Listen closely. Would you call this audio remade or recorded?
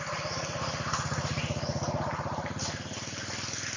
recorded